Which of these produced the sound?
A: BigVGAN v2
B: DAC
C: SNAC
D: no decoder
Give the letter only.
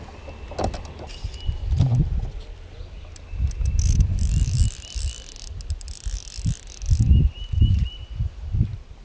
D